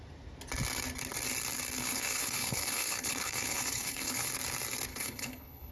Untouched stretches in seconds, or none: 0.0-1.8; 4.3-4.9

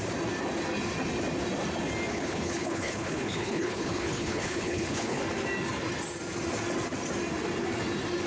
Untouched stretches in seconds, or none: 0.0-2.1; 5.2-8.3

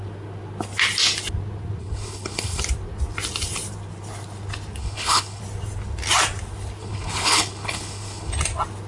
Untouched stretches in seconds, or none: 0.0-1.8; 2.6-4.8; 5.4-6.8; 8.3-8.9

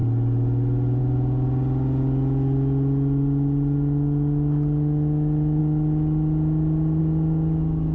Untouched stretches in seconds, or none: 0.0-7.9